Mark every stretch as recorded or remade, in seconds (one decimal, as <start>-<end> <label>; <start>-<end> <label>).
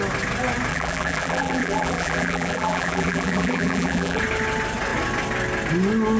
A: 0.0-0.7 recorded; 0.7-4.2 remade; 4.2-6.2 recorded